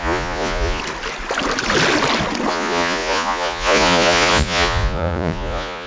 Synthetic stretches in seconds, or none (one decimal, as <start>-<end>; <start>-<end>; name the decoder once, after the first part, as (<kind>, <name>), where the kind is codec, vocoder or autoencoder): 0.0-0.8 (vocoder, Vocos); 2.5-5.9